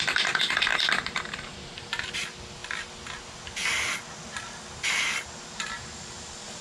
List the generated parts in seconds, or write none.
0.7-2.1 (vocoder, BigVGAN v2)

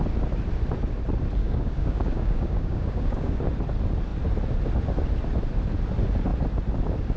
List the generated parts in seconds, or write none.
1.4-3.4 (codec, DAC)

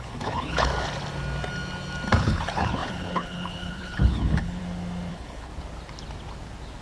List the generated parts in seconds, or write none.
0.0-0.7 (codec, HILCodec); 2.2-4.6; 5.1-5.5

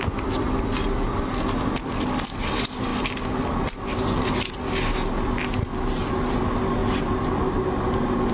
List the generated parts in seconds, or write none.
none